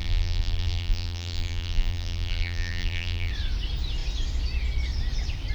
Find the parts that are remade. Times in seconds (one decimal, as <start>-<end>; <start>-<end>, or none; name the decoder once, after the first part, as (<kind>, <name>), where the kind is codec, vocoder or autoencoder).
0.0-3.3 (vocoder, BigVGAN v2)